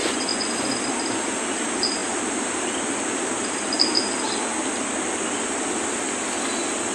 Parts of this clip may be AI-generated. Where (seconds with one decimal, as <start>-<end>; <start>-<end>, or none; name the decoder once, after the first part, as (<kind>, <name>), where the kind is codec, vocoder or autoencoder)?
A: 0.0-0.5 (vocoder, Vocos)